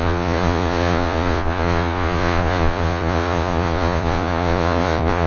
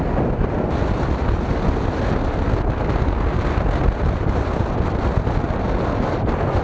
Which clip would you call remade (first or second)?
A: first